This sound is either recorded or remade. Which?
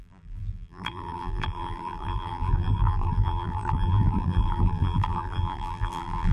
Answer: remade